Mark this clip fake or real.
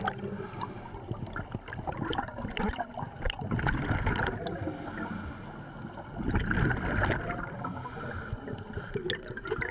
real